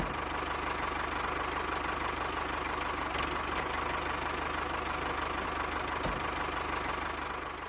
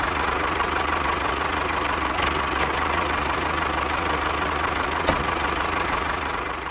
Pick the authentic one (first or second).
first